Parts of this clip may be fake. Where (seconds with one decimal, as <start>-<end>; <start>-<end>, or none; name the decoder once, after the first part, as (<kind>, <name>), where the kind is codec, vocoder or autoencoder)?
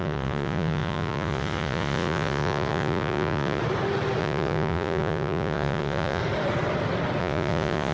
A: 0.0-3.6 (vocoder, Vocos); 4.2-6.2; 7.2-7.9